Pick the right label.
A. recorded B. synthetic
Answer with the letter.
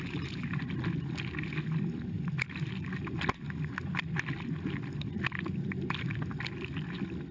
A